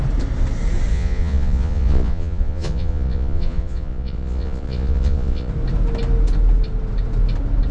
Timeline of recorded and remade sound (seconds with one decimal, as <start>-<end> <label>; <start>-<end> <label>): 0.0-0.9 recorded; 0.9-5.5 remade; 5.5-7.7 recorded